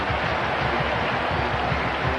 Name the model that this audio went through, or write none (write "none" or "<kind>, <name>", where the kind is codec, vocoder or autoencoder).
none